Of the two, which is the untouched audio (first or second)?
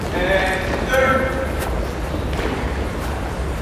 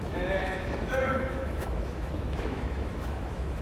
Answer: first